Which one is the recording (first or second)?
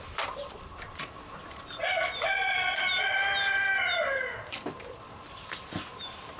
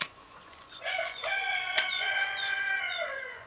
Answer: first